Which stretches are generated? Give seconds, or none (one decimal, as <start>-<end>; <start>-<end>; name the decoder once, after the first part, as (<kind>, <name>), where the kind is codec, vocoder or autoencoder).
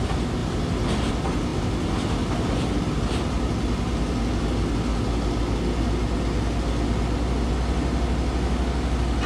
none